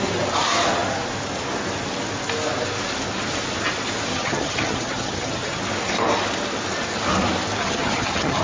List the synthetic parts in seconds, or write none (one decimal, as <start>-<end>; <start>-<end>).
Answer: 4.1-5.6; 7.6-8.4